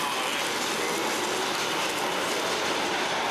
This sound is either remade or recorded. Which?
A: recorded